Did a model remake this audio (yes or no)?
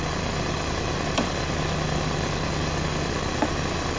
no